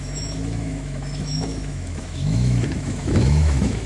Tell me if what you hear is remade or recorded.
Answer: remade